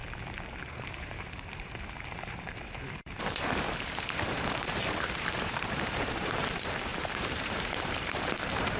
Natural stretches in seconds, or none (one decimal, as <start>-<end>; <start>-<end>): 0.0-0.6